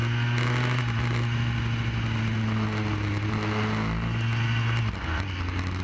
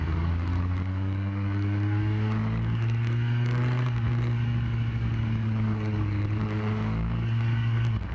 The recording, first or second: first